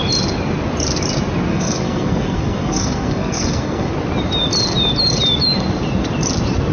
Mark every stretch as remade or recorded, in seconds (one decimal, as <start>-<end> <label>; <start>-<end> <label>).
0.0-1.5 recorded; 1.5-3.9 remade; 3.9-6.7 recorded